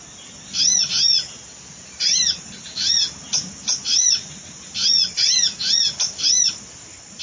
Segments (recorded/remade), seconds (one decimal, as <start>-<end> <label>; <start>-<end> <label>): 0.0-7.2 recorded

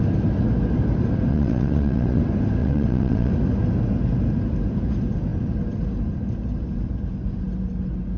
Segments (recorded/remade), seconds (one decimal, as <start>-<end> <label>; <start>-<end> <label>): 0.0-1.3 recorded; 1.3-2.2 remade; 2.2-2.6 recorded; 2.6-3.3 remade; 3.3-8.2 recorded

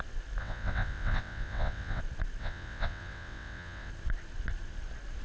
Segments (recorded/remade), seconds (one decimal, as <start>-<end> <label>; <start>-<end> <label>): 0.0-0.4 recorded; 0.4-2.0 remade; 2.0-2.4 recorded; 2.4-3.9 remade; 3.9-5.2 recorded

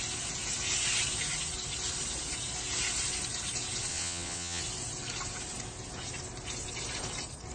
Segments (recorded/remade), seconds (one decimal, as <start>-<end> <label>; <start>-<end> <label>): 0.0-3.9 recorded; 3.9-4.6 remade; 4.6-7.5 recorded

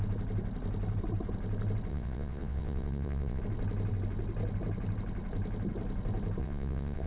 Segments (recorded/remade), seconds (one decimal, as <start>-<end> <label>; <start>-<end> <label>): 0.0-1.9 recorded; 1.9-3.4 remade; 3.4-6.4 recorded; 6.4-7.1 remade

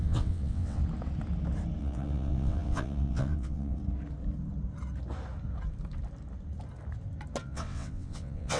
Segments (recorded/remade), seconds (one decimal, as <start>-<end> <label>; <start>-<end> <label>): 0.0-0.8 remade; 0.8-1.8 recorded; 1.8-3.8 remade; 3.8-7.4 recorded; 7.4-8.6 remade

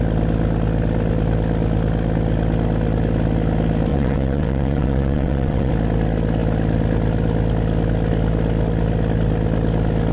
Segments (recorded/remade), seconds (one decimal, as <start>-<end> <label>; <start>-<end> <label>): 0.0-3.9 recorded; 3.9-5.7 remade; 5.7-10.1 recorded